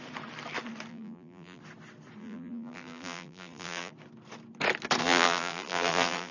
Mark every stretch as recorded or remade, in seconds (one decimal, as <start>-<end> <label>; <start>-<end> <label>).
0.0-0.9 recorded; 0.9-1.6 remade; 1.6-2.2 recorded; 2.2-3.9 remade; 3.9-5.0 recorded; 5.0-6.3 remade